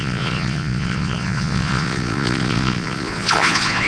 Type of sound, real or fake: fake